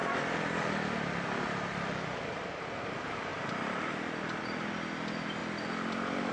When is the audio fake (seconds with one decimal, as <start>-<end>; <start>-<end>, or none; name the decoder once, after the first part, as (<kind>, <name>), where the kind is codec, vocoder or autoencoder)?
0.0-2.0 (vocoder, BigVGAN v2); 3.3-4.4; 5.4-6.3